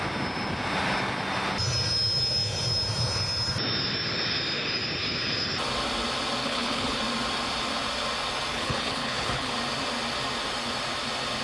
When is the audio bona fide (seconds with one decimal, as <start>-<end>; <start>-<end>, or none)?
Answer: 0.0-6.4; 7.0-8.5; 9.5-11.4